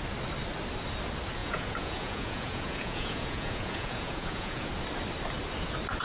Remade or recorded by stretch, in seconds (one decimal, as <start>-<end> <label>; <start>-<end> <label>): 0.0-1.4 recorded; 1.4-4.7 remade; 4.7-6.0 recorded